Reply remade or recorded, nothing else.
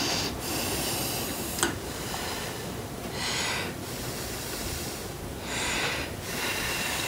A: recorded